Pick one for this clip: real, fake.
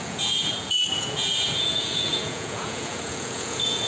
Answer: fake